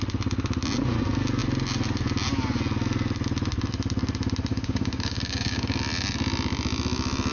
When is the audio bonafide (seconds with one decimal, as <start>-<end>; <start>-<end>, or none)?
0.0-4.5; 5.8-7.3